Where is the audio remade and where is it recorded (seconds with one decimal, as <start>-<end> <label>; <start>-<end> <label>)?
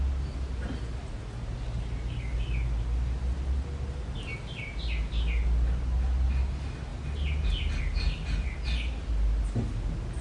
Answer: 0.0-10.2 recorded